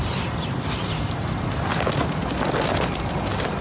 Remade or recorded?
recorded